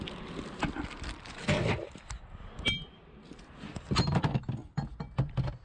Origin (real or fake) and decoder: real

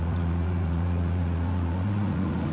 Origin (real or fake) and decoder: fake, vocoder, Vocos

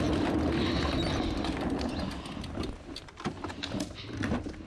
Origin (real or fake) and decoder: real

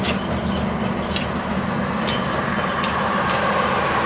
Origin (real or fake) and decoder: real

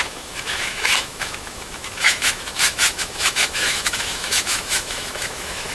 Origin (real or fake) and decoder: fake, autoencoder, DAC-VAE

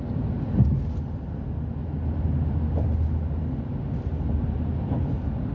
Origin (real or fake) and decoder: real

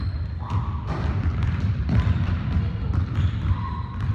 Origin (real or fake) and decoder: real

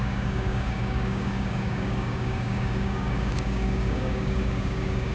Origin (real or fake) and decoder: fake, codec, DAC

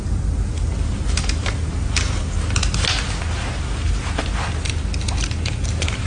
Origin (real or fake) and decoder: real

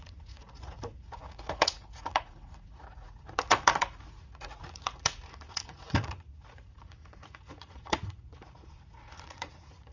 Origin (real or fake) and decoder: fake, vocoder, Vocos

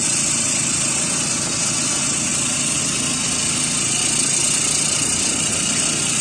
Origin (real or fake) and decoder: real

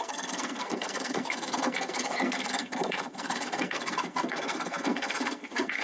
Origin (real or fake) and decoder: fake, codec, SNAC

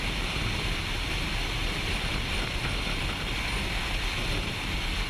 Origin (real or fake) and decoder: real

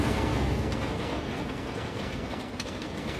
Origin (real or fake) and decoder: fake, codec, SNAC